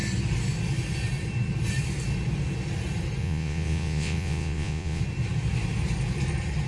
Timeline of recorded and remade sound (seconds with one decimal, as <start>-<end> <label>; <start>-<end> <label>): 0.0-3.2 recorded; 3.2-5.0 remade; 5.0-6.7 recorded